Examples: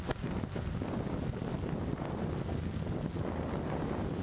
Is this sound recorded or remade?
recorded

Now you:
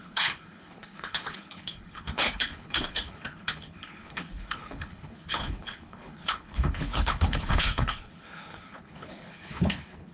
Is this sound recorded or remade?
remade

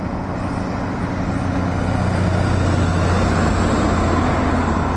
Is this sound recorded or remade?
recorded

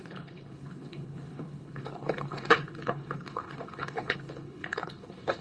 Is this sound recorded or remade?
remade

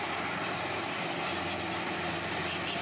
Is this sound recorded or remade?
recorded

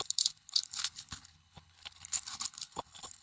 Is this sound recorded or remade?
remade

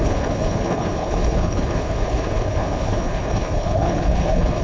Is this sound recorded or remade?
remade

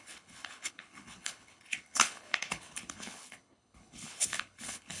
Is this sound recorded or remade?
remade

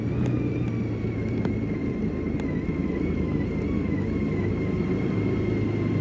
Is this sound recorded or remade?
recorded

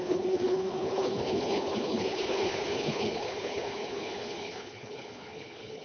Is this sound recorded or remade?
remade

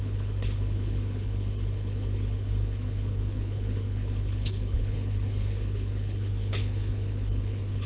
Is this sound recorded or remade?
remade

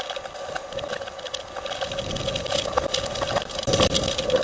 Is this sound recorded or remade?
recorded